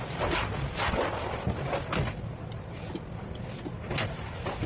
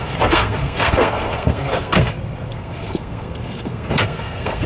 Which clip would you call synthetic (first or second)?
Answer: second